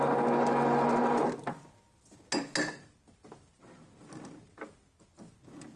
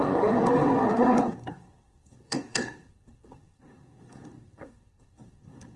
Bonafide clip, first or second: first